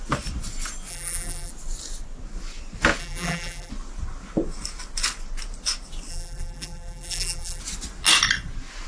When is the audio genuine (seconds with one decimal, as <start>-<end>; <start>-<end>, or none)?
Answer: 0.0-0.9; 1.5-3.0; 3.7-6.1; 7.6-8.9